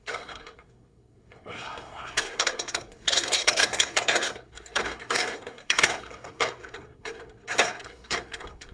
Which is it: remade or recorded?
remade